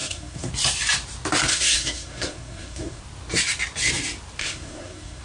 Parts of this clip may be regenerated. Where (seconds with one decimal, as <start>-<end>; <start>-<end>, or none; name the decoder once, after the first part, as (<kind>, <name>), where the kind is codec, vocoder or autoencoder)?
0.0-0.5 (codec, SNAC); 1.5-3.0; 4.4-5.2